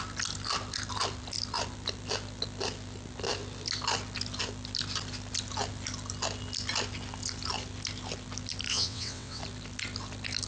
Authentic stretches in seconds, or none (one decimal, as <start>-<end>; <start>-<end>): 0.0-8.7; 9.4-10.5